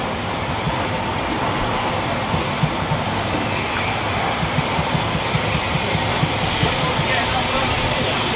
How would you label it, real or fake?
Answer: real